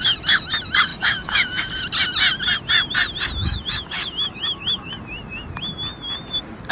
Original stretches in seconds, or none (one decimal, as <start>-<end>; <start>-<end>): 0.0-0.9; 1.7-3.4; 4.9-6.7